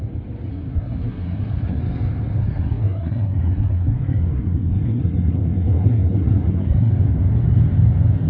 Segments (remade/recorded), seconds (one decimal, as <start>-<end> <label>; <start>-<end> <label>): 0.0-0.5 recorded; 0.5-1.8 remade; 1.8-2.4 recorded; 2.4-6.9 remade; 6.9-8.3 recorded